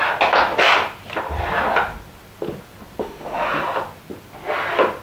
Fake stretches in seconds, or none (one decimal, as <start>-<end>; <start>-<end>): 3.0-3.6